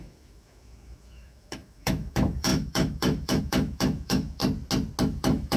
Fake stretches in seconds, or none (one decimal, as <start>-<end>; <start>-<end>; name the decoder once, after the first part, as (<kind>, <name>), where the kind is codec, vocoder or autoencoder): 0.0-4.4 (autoencoder, DAC-VAE); 5.0-5.6